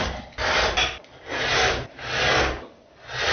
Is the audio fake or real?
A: real